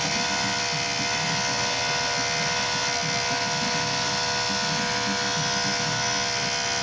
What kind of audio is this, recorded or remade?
recorded